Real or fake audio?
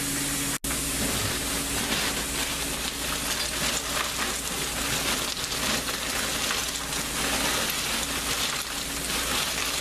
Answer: real